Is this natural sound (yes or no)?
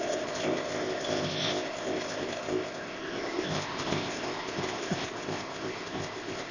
no